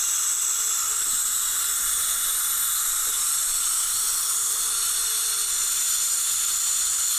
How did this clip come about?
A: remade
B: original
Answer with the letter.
B